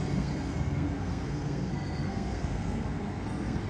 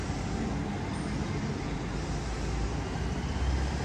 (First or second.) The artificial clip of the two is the first